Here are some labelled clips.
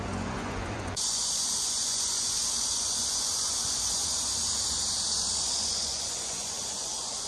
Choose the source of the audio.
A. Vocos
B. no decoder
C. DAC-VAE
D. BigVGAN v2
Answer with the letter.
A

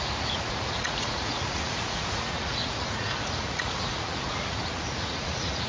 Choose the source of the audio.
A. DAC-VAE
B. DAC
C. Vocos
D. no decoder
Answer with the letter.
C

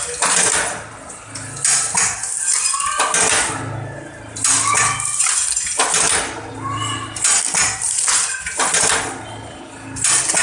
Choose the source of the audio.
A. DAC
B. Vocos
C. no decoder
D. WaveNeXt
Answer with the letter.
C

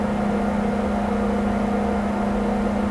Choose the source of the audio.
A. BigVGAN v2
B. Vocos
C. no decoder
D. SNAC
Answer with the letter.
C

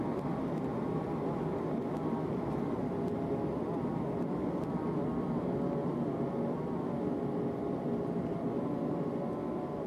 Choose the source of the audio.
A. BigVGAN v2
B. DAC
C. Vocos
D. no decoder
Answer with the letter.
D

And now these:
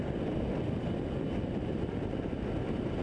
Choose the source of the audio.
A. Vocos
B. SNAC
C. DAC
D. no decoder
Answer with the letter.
D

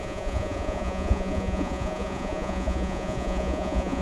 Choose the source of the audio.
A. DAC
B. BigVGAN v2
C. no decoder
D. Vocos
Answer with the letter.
D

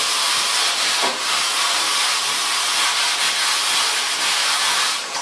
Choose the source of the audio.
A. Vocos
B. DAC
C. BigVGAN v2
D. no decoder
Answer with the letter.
D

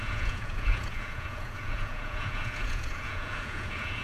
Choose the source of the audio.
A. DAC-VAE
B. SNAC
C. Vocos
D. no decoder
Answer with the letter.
C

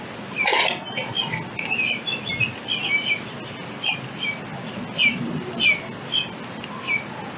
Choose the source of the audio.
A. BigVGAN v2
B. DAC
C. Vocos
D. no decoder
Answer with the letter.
D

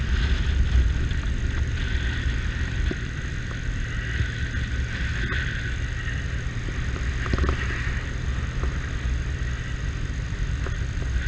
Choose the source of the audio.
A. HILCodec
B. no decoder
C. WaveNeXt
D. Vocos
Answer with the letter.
B